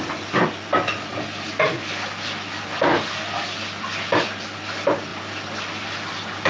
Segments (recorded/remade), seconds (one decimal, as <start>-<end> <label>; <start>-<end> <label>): 0.0-6.5 recorded